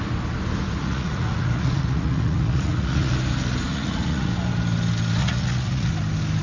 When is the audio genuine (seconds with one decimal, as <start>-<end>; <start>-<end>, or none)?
0.0-0.8; 3.1-3.7; 4.3-5.2; 5.9-6.4

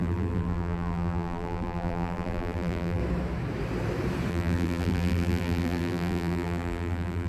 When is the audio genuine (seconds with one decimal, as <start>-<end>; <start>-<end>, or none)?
3.0-4.3

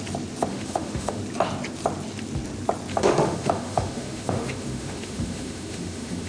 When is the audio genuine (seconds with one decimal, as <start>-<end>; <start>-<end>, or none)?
0.0-0.5; 1.2-2.9

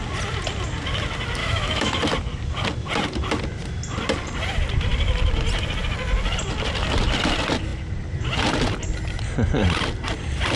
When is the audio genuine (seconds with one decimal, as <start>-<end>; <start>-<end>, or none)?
0.0-1.4; 2.0-10.6

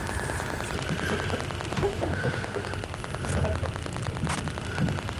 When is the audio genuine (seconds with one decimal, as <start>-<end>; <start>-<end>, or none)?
0.0-1.7; 2.7-5.2

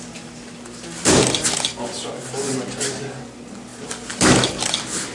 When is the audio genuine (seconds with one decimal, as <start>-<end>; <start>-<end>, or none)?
0.0-5.1

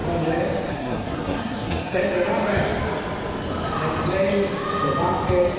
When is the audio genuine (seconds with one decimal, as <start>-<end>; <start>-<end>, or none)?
0.0-0.7; 2.0-5.6